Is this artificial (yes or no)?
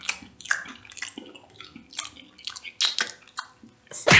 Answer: no